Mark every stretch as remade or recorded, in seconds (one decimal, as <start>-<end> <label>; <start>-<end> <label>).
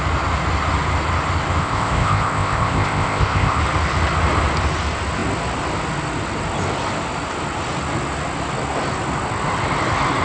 0.0-1.6 recorded; 1.6-3.6 remade; 3.6-10.2 recorded